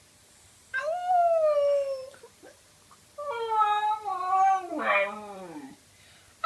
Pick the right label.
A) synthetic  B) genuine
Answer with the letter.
B